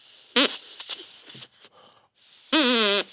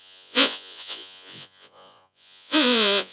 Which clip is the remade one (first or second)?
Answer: second